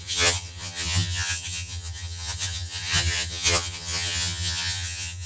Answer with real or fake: fake